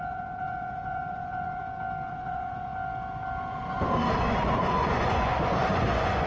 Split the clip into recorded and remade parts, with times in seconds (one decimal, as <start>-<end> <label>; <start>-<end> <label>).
0.0-1.6 remade; 1.6-2.1 recorded; 2.1-2.7 remade; 2.7-4.2 recorded; 4.2-6.3 remade